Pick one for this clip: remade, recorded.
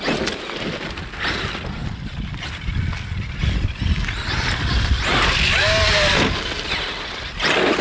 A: recorded